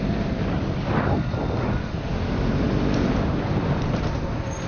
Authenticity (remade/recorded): recorded